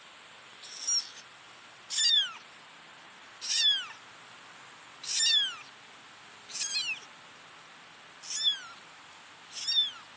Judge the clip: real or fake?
real